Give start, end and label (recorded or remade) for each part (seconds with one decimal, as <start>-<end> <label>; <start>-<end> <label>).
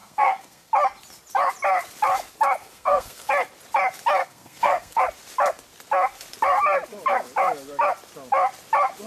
0.0-0.7 remade; 0.7-2.6 recorded; 2.6-3.3 remade; 3.3-4.2 recorded; 4.2-5.0 remade; 5.0-9.1 recorded